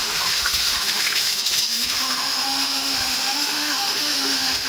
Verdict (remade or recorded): remade